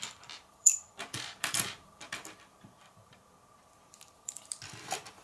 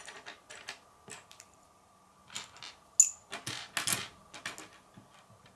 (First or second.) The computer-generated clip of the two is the first